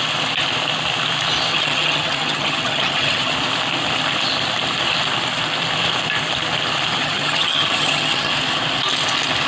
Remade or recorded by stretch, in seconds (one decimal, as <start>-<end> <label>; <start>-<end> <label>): 0.0-1.5 recorded; 1.5-3.3 remade; 3.3-7.0 recorded; 7.0-8.3 remade; 8.3-9.5 recorded